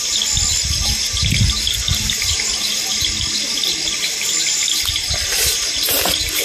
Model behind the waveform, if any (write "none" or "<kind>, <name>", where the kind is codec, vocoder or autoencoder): none